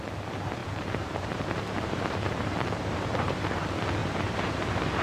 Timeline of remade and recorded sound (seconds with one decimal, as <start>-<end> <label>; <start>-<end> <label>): 0.0-0.6 recorded; 0.6-3.6 remade; 3.6-4.0 recorded; 4.0-5.0 remade